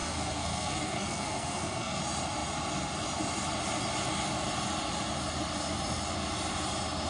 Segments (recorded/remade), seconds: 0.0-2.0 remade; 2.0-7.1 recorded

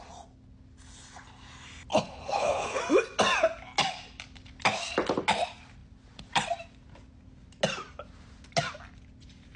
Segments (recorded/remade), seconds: 0.0-1.9 recorded; 1.9-2.8 remade; 2.8-9.6 recorded

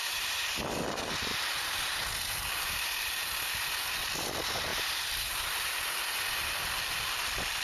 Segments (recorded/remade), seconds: 0.0-7.6 recorded

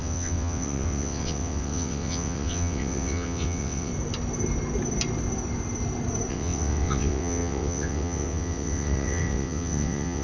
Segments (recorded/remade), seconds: 0.0-3.9 remade; 3.9-6.3 recorded; 6.3-10.2 remade

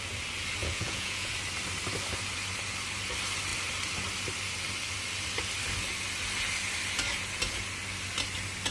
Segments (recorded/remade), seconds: 0.0-0.6 recorded; 0.6-1.3 remade; 1.3-8.7 recorded

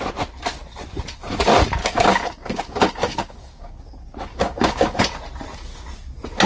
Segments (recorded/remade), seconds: 0.0-1.8 recorded; 1.8-3.8 remade; 3.8-4.3 recorded; 4.3-5.0 remade; 5.0-6.5 recorded

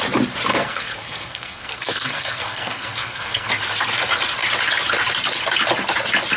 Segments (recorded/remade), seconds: 0.0-0.5 recorded; 0.5-3.5 remade; 3.5-6.4 recorded

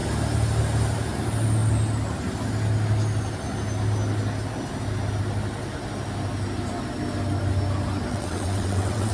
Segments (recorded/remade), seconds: 0.0-8.1 recorded; 8.1-9.1 remade